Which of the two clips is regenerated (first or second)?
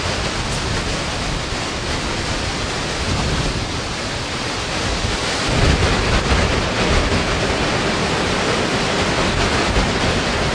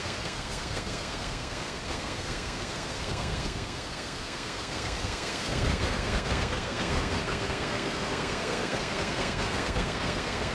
second